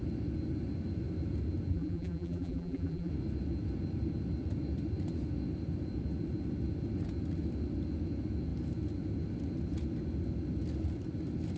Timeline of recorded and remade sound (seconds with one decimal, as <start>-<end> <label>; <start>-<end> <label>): 0.0-1.7 recorded; 1.7-3.1 remade; 3.1-11.6 recorded